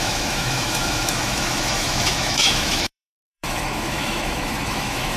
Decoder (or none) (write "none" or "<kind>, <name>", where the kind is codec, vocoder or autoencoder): autoencoder, DAC-VAE